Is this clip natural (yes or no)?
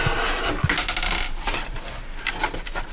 yes